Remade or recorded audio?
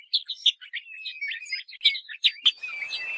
recorded